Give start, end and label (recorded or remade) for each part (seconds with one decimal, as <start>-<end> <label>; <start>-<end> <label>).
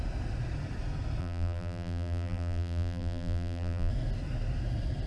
0.0-1.2 recorded; 1.2-3.9 remade; 3.9-5.1 recorded